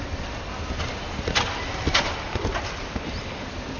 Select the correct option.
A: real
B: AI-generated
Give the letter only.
A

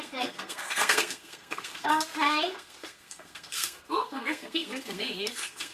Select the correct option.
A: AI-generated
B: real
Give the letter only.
A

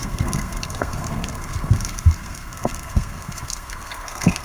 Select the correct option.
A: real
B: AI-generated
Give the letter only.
B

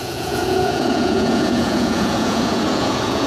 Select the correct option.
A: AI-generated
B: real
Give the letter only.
A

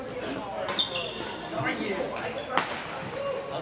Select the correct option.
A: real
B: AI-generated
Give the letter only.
A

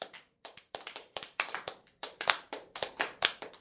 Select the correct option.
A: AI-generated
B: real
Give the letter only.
A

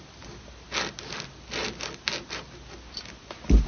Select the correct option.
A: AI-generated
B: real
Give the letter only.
B